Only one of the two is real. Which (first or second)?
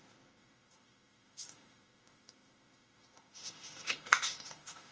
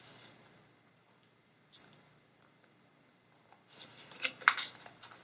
second